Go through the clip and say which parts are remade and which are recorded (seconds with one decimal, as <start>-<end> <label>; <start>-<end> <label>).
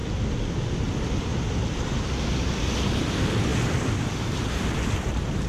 0.0-5.5 recorded